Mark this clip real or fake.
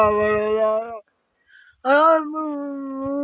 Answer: real